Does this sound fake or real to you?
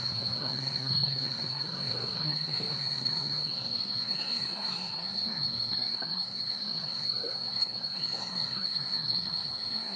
fake